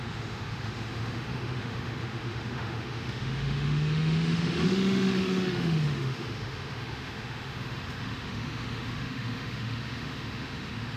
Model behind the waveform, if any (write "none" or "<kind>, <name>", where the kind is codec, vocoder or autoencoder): autoencoder, DAC-VAE